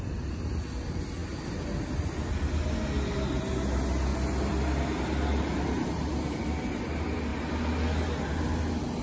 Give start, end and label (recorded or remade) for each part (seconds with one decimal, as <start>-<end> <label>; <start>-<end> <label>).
0.0-9.0 recorded